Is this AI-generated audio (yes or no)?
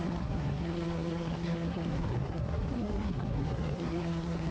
yes